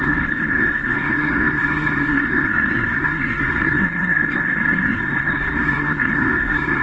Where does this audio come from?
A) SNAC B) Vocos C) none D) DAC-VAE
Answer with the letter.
A